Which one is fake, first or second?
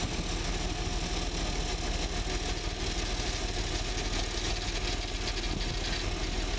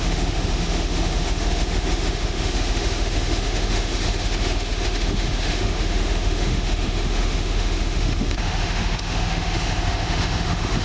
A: second